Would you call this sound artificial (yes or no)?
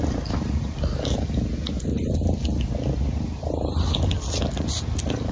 no